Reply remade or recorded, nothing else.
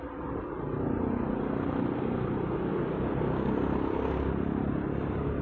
recorded